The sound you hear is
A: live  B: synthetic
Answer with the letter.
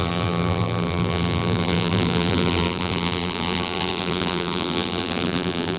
B